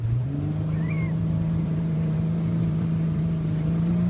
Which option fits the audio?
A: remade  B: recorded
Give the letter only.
A